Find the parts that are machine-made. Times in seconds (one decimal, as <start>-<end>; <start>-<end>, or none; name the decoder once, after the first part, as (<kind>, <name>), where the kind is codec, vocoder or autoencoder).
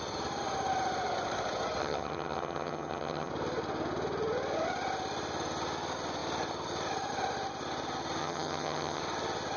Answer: 1.8-3.3 (vocoder, HiFi-GAN); 8.2-9.0